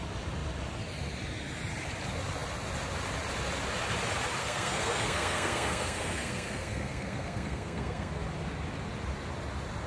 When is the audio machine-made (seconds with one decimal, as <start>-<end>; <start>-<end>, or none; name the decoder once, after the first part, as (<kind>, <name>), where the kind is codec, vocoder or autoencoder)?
4.4-8.1 (codec, SNAC)